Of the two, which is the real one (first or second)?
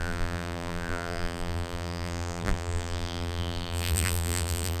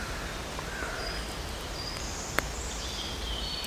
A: second